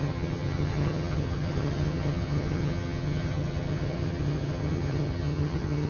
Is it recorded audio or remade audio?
remade